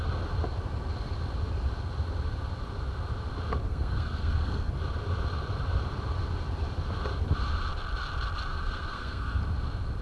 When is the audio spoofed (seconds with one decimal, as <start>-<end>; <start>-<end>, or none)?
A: 3.7-4.7; 8.5-9.4